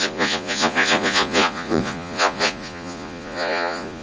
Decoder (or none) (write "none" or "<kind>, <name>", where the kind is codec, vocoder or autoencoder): vocoder, Vocos